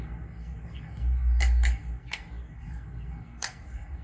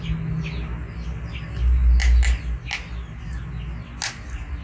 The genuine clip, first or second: second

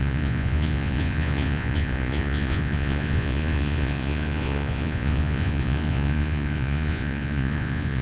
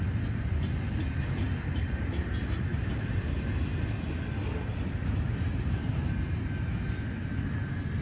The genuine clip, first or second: second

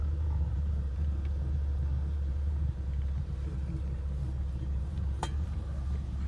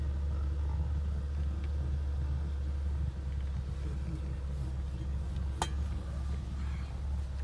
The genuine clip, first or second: second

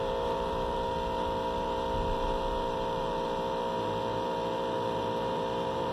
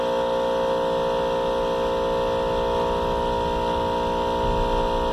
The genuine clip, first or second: second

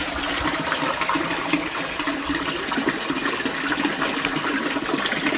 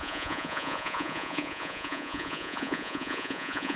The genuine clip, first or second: first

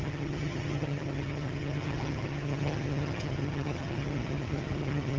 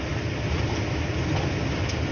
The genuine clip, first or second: second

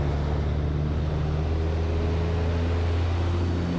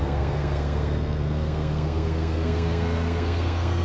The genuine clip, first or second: first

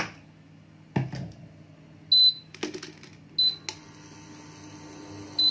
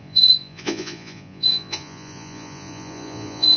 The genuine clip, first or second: first